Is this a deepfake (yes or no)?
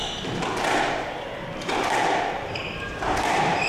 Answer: no